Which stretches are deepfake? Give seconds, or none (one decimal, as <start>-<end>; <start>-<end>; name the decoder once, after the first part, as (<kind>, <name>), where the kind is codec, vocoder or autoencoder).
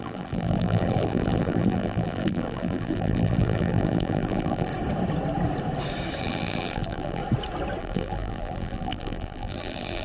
0.0-4.7 (vocoder, BigVGAN v2); 6.2-7.2; 7.8-10.0